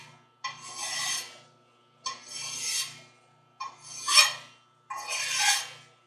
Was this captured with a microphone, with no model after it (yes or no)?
yes